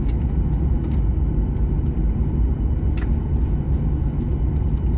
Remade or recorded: recorded